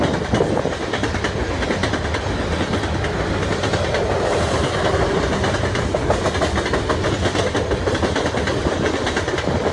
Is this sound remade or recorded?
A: recorded